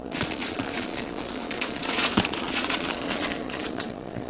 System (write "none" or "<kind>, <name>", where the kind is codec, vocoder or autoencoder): vocoder, Vocos